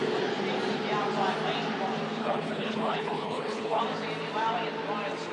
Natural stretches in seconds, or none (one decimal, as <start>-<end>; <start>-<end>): 0.0-2.2; 3.8-5.3

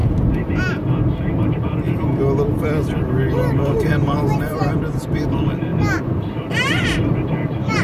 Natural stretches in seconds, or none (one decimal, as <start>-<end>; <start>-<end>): 0.0-3.6; 4.8-7.8

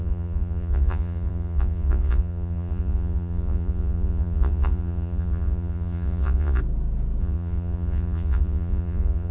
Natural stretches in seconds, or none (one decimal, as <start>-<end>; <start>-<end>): 6.6-7.2

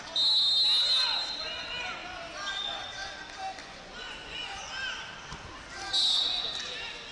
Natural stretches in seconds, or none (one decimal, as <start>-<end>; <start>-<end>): 0.0-3.6; 4.7-7.1

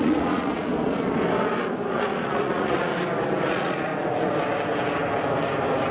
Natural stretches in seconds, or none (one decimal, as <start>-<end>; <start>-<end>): 0.7-1.9; 2.9-3.4; 3.9-5.9

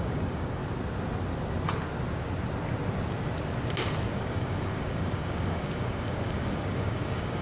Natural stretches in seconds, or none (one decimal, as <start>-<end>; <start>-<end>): 0.6-4.1